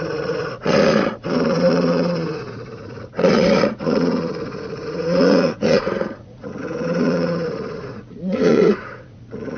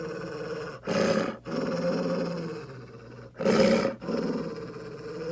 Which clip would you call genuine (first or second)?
second